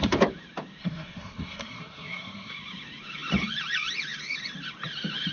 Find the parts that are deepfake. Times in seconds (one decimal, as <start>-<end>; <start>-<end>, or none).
0.8-2.5